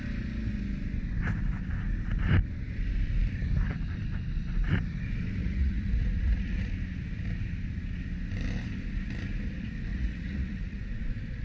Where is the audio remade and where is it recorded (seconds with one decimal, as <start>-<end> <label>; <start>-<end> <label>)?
0.0-5.4 recorded; 5.4-6.7 remade; 6.7-9.9 recorded; 9.9-10.8 remade; 10.8-11.4 recorded